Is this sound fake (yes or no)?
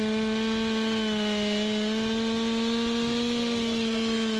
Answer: no